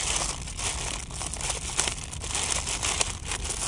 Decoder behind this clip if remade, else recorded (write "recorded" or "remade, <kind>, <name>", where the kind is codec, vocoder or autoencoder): recorded